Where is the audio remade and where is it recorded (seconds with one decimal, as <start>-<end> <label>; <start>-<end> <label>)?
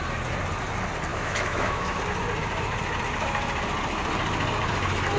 0.0-1.1 recorded; 1.1-2.0 remade; 2.0-5.2 recorded